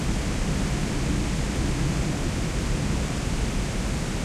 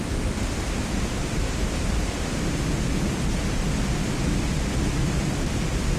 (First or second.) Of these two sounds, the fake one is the second